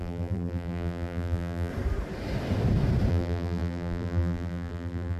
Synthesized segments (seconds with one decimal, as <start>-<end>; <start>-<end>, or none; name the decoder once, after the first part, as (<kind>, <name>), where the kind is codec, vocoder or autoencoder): 0.0-1.7 (vocoder, BigVGAN v2); 3.1-5.2